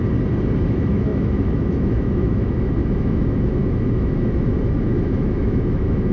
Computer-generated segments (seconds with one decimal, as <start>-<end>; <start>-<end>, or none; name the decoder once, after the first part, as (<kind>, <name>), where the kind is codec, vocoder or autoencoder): 0.6-6.1 (autoencoder, DAC-VAE)